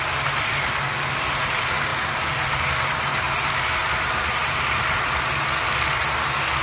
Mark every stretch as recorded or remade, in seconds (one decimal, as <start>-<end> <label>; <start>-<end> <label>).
0.0-1.9 recorded; 1.9-4.6 remade; 4.6-6.6 recorded